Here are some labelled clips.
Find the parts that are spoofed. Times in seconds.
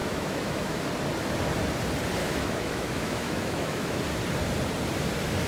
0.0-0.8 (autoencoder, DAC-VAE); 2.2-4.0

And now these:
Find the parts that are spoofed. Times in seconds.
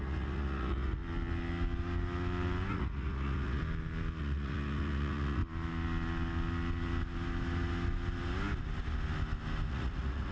0.0-1.0 (vocoder, Vocos); 2.7-3.6; 4.2-5.4; 9.7-10.3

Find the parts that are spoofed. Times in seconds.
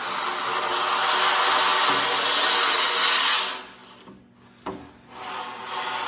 none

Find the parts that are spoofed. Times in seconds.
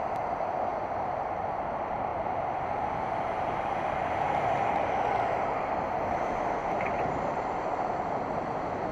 0.7-1.6 (vocoder, BigVGAN v2); 2.1-4.1; 6.6-7.7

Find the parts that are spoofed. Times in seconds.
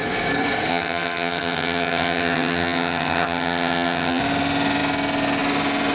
0.7-4.2 (vocoder, HiFi-GAN)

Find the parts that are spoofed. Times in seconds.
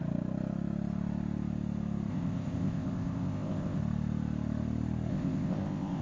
2.1-3.8 (codec, ZipCodec); 5.1-6.0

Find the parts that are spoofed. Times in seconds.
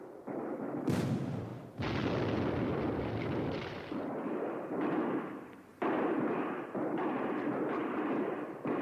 none